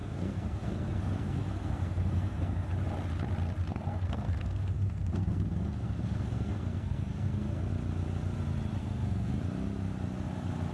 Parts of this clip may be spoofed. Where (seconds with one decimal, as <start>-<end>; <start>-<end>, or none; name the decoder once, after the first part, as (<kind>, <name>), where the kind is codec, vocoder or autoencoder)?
0.0-2.7 (codec, SNAC); 3.7-7.7; 8.8-9.3